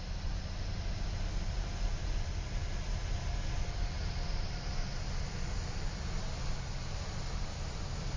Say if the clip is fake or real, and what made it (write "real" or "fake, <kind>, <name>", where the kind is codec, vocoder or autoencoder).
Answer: real